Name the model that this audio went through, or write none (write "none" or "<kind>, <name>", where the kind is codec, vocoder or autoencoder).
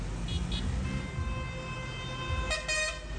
none